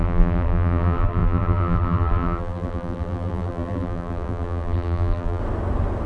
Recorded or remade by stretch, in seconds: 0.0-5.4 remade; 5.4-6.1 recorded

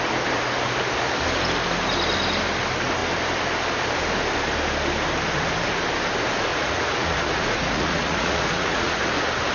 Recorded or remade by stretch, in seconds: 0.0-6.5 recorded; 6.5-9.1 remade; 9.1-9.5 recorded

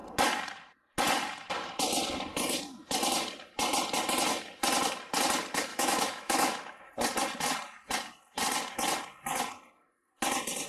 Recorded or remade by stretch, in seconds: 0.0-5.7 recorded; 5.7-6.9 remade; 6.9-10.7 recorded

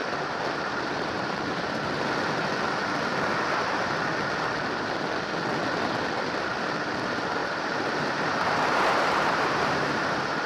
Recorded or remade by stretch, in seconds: 0.0-2.0 remade; 2.0-7.4 recorded; 7.4-10.5 remade